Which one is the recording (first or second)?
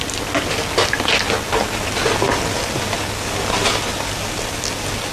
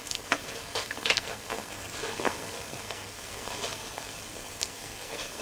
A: first